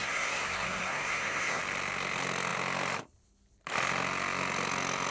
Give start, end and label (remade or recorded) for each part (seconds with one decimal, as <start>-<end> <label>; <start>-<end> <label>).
0.0-1.6 remade; 1.6-5.1 recorded